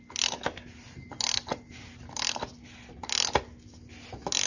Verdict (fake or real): real